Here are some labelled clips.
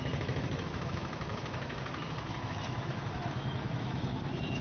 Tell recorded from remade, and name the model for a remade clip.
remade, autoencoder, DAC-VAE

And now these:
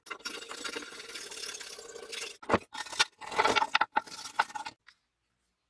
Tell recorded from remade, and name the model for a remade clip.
recorded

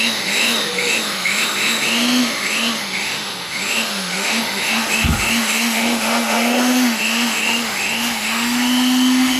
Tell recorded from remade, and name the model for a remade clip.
remade, autoencoder, DAC-VAE